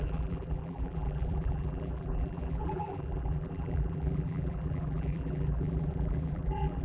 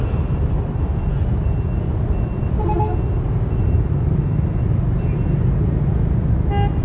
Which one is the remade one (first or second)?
first